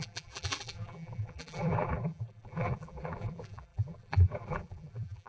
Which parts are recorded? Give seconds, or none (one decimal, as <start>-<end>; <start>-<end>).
none